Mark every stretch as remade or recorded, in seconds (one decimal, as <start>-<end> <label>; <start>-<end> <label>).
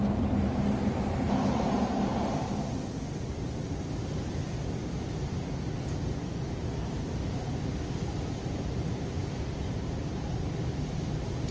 0.0-11.5 recorded